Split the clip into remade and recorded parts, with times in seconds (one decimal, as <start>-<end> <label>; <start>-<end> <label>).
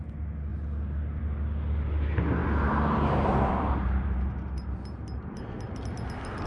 0.0-2.4 recorded; 2.4-5.4 remade; 5.4-6.5 recorded